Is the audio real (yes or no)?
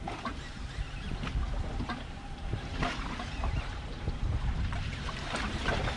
no